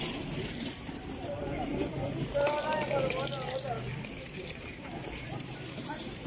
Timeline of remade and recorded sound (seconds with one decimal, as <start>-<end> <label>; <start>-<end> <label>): 0.0-1.4 remade; 1.4-4.4 recorded; 4.4-6.3 remade